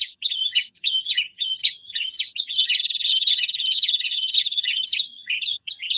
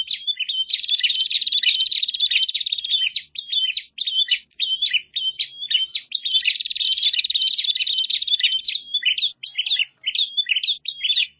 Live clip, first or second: second